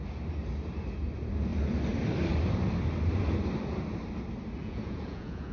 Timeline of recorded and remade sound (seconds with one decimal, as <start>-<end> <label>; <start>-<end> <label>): 0.0-4.6 recorded; 4.6-5.5 remade